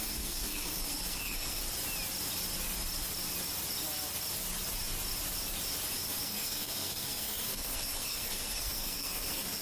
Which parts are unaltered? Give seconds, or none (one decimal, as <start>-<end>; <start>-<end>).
1.6-6.2